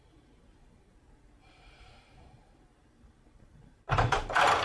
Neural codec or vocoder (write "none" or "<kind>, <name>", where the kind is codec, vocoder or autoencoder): vocoder, BigVGAN v2